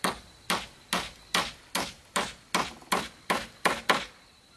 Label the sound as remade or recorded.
recorded